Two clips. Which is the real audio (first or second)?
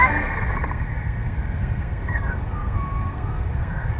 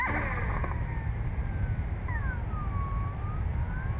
second